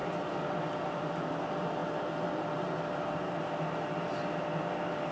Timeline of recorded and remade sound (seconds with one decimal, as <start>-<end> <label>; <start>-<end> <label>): 0.0-1.8 remade; 1.8-5.1 recorded